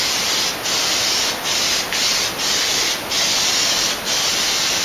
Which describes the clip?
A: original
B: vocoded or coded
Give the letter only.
A